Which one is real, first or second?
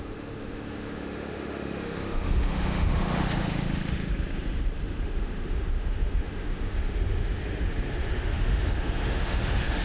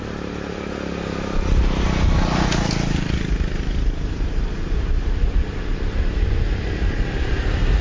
second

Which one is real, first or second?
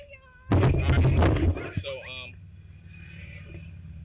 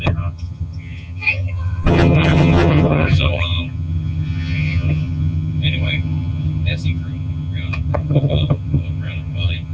first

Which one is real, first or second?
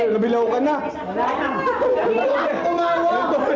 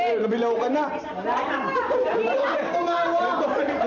first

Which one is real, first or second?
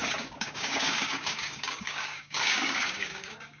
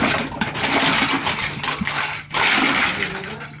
second